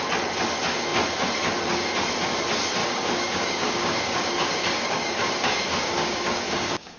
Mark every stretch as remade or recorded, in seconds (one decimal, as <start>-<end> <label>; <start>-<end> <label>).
0.0-2.8 recorded; 2.8-7.0 remade